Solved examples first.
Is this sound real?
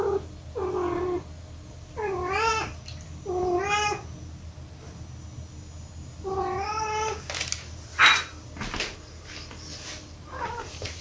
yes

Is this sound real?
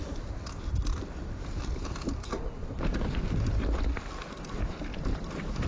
yes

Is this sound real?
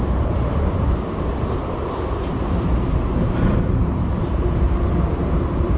no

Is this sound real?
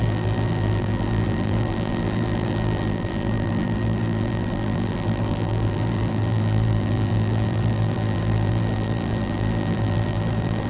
no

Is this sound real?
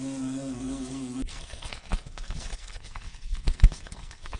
no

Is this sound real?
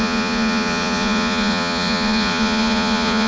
no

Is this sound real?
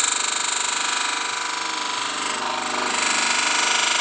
yes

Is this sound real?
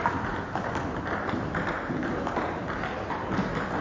yes